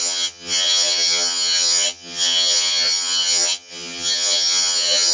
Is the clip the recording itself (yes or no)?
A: no